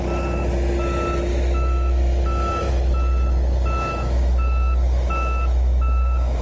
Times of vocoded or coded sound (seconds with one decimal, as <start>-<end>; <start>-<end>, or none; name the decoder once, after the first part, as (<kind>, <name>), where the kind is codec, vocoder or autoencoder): 1.3-2.7 (autoencoder, DAC-VAE); 3.9-6.4